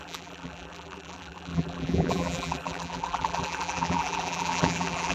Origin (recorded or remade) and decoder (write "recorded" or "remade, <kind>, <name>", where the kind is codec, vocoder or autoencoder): remade, vocoder, BigVGAN v2